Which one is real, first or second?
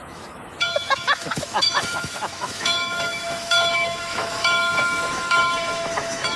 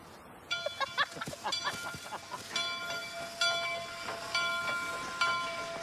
second